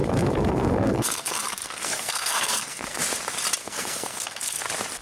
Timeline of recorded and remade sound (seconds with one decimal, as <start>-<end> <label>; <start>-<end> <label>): 0.0-3.0 remade; 3.0-3.6 recorded; 3.6-4.6 remade; 4.6-5.0 recorded